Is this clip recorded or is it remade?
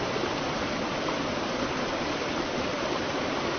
recorded